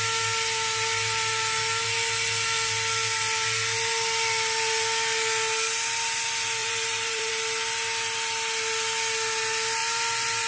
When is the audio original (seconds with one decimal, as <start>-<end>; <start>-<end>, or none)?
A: 0.0-6.6; 7.3-9.8